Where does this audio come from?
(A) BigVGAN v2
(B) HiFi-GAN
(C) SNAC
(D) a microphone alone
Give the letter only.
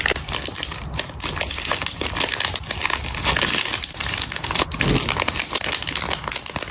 D